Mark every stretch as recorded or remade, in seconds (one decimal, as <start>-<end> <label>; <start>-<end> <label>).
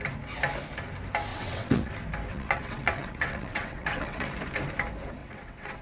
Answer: 0.0-1.3 recorded; 1.3-1.9 remade; 1.9-2.3 recorded; 2.3-4.3 remade; 4.3-5.2 recorded; 5.2-5.8 remade